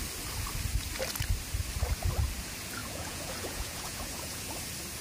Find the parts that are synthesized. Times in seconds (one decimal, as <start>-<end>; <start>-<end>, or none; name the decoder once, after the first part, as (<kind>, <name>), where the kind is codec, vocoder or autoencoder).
2.8-4.4 (vocoder, Vocos)